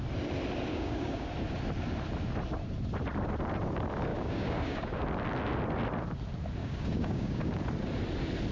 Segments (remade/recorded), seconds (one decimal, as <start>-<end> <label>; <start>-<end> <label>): 0.0-0.7 recorded; 0.7-1.3 remade; 1.3-4.1 recorded; 4.1-5.0 remade; 5.0-6.6 recorded; 6.6-7.6 remade; 7.6-8.5 recorded